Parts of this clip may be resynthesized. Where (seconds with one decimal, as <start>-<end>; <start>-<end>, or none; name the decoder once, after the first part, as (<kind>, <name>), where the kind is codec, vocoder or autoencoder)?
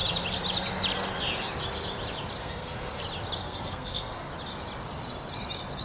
2.4-3.0 (codec, SNAC); 3.4-4.3